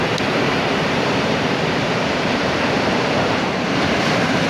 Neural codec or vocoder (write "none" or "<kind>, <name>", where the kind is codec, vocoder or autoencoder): vocoder, BigVGAN v2